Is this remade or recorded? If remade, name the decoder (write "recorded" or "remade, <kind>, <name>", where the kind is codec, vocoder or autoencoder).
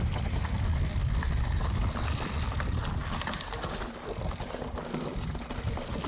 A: recorded